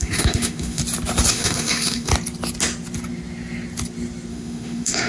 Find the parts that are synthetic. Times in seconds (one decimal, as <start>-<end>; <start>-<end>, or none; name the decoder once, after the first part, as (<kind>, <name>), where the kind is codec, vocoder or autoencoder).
0.0-0.8 (autoencoder, DAC-VAE); 1.3-2.1; 4.3-5.1